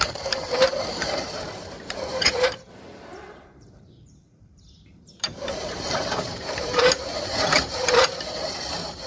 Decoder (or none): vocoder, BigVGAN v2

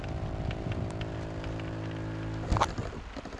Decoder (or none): none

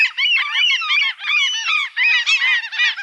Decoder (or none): vocoder, BigVGAN v2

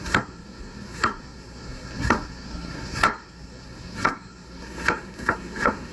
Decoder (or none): codec, SNAC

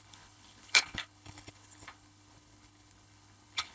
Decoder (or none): codec, HILCodec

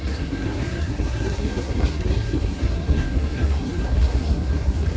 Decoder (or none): codec, SNAC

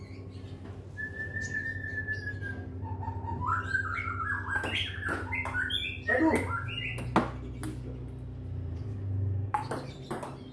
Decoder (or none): none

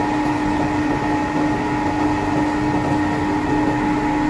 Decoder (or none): none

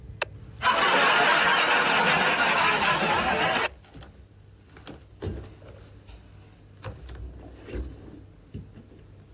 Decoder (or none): none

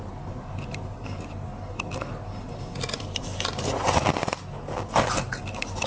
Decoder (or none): none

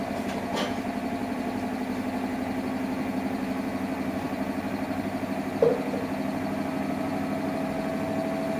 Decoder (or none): none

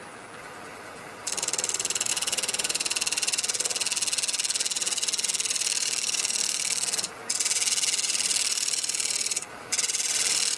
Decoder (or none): vocoder, BigVGAN v2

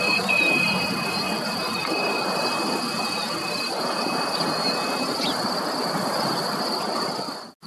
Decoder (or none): none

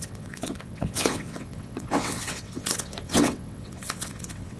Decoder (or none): vocoder, WaveNeXt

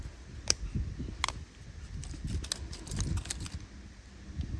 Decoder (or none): none